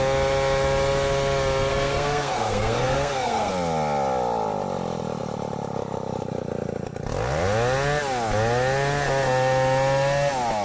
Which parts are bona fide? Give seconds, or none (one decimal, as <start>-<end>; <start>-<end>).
0.0-1.7; 3.5-10.6